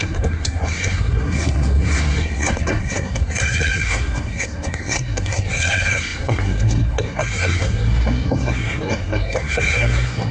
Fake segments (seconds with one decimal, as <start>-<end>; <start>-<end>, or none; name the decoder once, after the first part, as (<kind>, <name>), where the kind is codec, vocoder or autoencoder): 0.0-10.3 (codec, SNAC)